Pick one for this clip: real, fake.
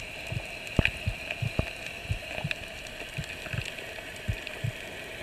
real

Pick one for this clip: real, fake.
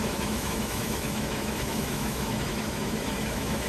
fake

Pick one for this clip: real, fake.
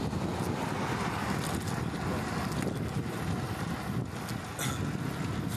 real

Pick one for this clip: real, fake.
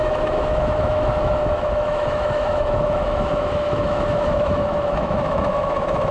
fake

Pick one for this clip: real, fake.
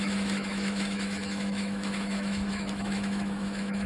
fake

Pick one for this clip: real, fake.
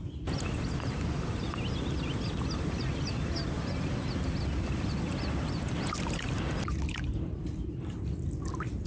real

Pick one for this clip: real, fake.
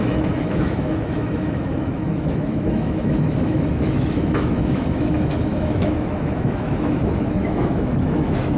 fake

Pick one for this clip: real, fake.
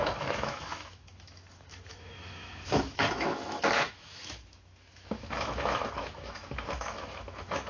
fake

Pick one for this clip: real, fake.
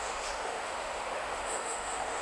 fake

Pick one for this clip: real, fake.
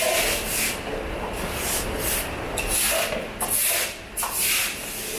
real